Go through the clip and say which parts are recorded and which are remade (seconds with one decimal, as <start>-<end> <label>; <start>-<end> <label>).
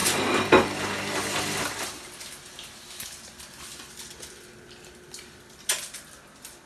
0.0-6.7 recorded